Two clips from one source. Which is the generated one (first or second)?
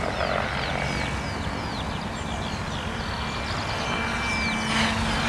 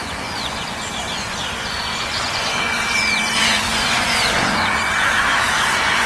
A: second